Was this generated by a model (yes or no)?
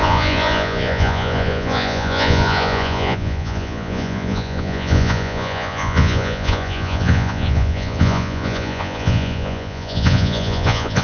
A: yes